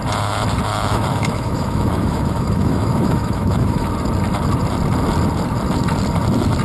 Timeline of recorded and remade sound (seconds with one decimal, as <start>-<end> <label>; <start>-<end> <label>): 0.0-0.7 recorded; 0.7-3.9 remade; 3.9-6.6 recorded